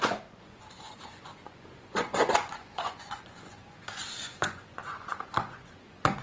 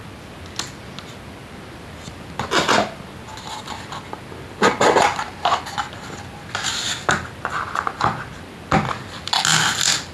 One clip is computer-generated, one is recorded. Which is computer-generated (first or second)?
first